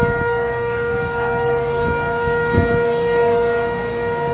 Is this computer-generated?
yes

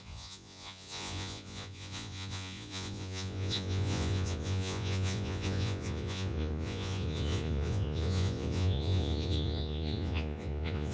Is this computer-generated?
yes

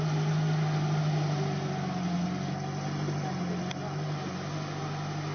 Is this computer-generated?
no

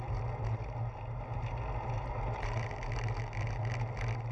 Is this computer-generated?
no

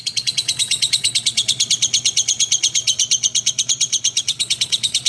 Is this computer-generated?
yes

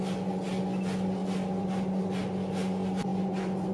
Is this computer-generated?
no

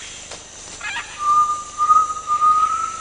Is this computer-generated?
yes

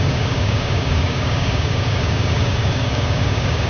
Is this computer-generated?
yes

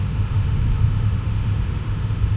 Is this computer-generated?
yes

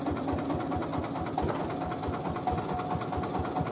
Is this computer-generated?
no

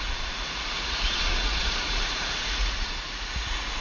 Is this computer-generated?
yes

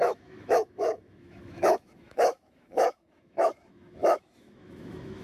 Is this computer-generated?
yes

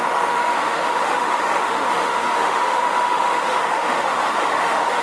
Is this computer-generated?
yes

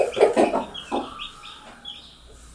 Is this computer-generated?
no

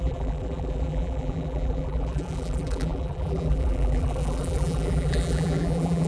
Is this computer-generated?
yes